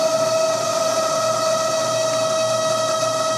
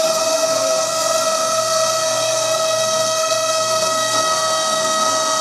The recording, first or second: first